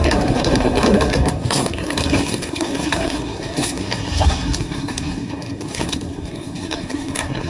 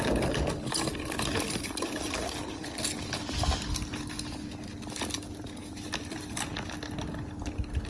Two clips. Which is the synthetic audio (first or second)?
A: first